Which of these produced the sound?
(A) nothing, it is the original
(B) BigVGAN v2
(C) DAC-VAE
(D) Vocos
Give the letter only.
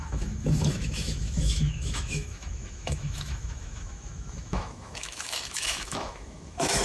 C